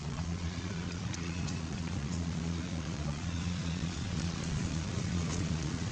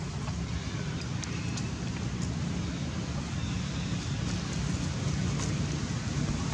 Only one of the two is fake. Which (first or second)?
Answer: first